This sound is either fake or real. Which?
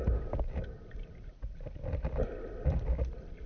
real